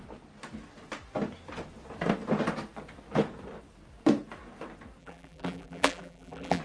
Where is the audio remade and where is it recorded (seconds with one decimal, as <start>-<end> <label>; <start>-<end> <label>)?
0.0-5.0 recorded; 5.0-6.6 remade